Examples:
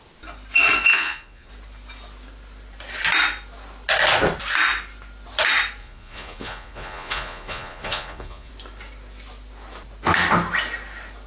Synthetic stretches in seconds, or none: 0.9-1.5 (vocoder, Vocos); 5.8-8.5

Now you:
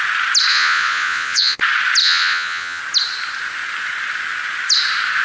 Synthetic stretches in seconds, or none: 0.5-1.6 (vocoder, Vocos); 2.0-2.8

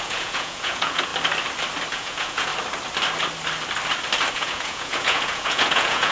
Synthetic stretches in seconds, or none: 0.0-1.1 (vocoder, Vocos); 1.9-2.5; 4.3-6.1

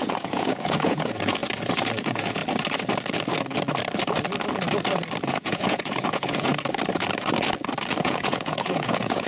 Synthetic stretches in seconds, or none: 0.0-1.4 (vocoder, Vocos); 2.0-2.4; 5.3-6.5; 8.0-9.3

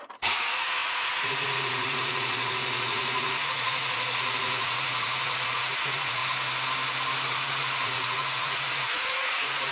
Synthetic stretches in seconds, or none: 0.0-6.2 (vocoder, Vocos); 7.3-9.7

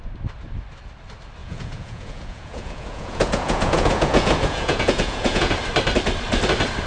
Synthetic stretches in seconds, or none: 1.4-5.5 (vocoder, Vocos)

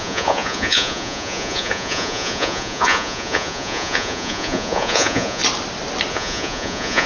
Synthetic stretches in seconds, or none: 0.0-5.4 (vocoder, Vocos); 6.1-7.1